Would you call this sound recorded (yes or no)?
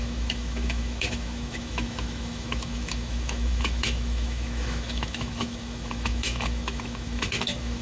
no